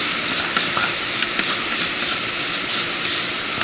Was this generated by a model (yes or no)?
no